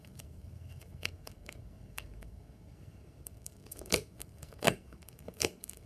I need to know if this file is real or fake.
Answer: fake